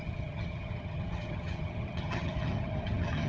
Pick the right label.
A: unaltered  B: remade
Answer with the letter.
B